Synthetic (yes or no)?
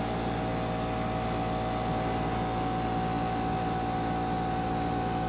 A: no